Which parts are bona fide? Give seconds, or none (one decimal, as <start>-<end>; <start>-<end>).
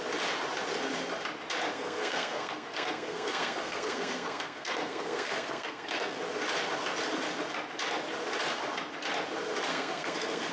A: 0.0-1.7; 6.2-9.7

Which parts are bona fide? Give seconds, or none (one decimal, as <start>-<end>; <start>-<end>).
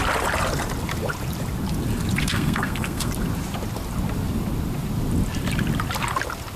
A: 0.0-2.2; 3.1-6.6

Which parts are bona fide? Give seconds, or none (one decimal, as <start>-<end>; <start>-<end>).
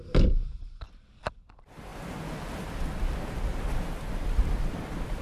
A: 0.0-5.2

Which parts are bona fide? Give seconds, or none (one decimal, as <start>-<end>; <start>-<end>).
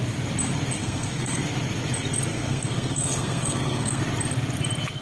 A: 0.0-0.8; 1.4-2.3; 4.0-5.0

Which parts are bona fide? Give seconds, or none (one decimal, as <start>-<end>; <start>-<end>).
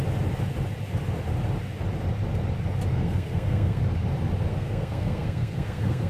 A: 0.0-2.9; 3.8-4.5